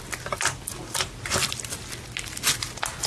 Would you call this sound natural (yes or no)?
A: yes